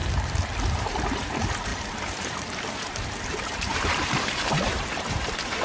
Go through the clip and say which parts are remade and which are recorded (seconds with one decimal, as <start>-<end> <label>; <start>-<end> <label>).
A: 0.0-0.7 recorded; 0.7-5.6 remade